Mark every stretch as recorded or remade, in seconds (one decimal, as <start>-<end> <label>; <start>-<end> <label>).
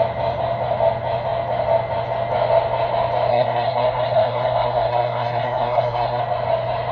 0.0-3.3 recorded; 3.3-6.2 remade; 6.2-6.9 recorded